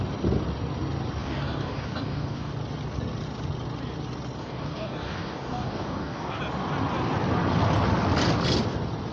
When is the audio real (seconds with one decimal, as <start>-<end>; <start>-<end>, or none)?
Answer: 0.0-1.2; 2.5-4.4; 6.4-9.1